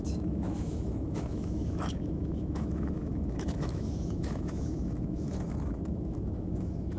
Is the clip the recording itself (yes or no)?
no